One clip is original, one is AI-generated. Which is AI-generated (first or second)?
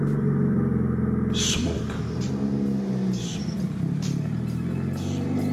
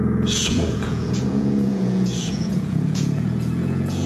second